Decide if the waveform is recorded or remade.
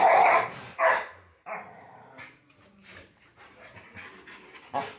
remade